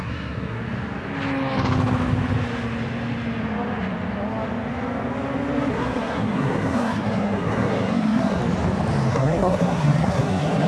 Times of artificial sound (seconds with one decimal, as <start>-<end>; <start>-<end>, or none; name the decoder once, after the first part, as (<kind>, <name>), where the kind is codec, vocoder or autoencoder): 0.0-0.6 (codec, SNAC); 5.7-8.4; 9.1-10.7